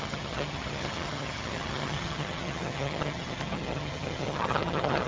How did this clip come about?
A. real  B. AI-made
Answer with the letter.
B